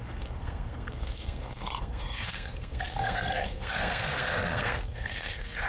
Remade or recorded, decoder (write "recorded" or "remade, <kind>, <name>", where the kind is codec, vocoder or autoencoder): remade, codec, SNAC